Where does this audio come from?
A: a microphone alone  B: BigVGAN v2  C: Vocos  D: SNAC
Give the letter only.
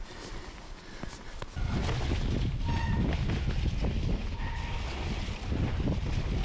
A